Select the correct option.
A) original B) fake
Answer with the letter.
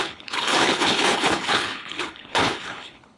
B